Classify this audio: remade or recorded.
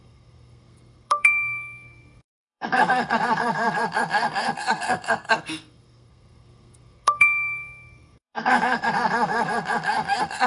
remade